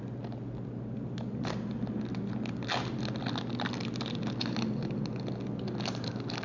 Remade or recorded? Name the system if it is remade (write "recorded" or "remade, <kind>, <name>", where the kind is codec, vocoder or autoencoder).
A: recorded